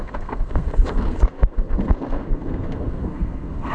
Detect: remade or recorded remade